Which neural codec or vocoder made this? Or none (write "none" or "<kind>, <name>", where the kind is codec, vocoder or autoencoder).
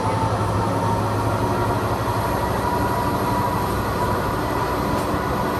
none